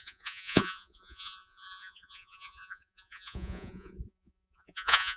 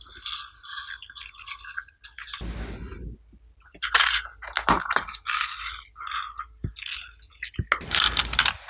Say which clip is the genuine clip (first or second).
second